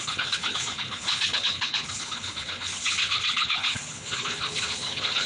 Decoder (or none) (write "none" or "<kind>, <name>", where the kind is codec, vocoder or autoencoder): codec, HILCodec